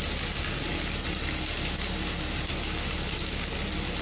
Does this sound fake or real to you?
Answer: real